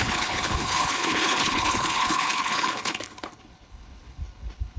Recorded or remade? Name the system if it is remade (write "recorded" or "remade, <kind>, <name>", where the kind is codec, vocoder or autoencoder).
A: remade, codec, HILCodec